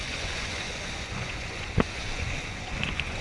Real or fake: fake